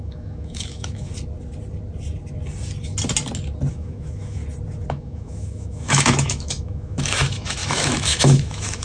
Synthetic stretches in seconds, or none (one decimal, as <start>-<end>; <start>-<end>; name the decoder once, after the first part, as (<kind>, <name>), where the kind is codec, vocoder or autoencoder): 0.0-1.1 (autoencoder, DAC-VAE); 3.7-4.4; 4.9-8.8